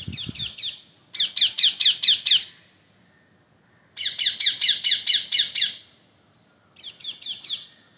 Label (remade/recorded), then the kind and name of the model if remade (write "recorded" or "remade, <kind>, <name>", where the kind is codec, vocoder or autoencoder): recorded